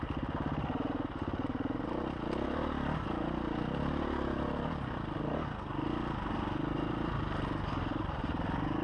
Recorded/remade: recorded